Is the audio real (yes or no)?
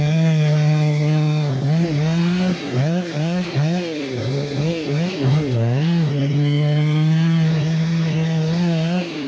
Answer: no